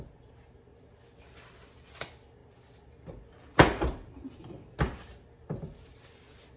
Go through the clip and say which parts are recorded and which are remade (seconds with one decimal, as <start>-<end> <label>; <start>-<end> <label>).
0.0-6.6 recorded